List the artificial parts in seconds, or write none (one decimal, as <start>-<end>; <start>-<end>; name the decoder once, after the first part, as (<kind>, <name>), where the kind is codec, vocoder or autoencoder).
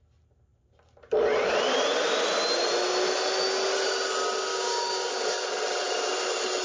4.5-5.1 (codec, DAC)